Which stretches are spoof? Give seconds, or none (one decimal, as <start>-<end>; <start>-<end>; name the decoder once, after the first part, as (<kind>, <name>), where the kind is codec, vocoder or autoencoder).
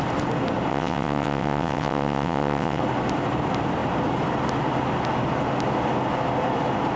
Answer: 0.7-2.8 (vocoder, WaveNeXt)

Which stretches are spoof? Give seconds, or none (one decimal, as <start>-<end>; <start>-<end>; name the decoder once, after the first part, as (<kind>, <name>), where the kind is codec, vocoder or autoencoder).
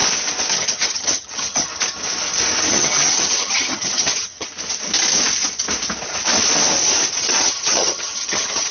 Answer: 0.5-1.7 (vocoder, HiFi-GAN); 2.7-4.5; 7.2-8.7